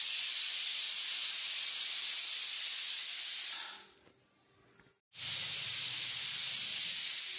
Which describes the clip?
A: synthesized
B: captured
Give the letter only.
B